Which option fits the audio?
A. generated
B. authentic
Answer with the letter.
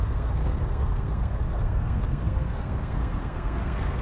A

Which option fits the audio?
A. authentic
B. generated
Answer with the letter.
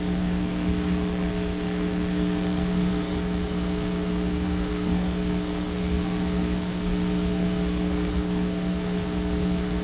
B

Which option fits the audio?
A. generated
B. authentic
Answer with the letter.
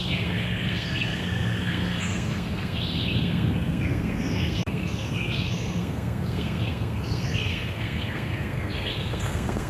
A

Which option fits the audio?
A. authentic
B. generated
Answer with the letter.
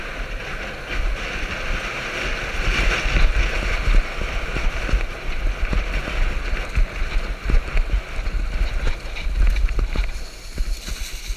A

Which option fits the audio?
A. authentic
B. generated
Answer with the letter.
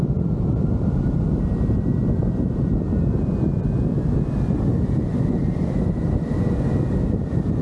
A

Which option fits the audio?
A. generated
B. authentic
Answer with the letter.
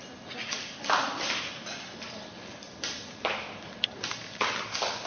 B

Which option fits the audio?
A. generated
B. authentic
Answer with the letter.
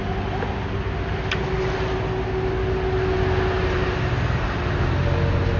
B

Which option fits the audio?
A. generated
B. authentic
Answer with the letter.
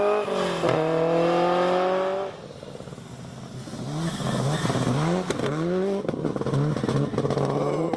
B